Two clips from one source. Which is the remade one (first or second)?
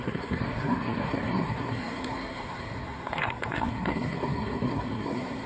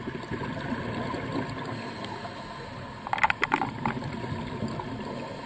first